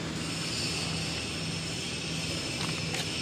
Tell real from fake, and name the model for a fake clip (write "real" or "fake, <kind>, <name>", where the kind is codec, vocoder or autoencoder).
real